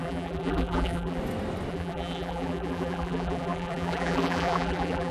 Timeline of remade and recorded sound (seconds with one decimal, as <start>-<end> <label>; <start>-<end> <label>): 0.0-1.2 remade; 1.2-1.7 recorded; 1.7-5.1 remade